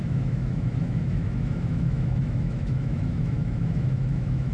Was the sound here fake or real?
fake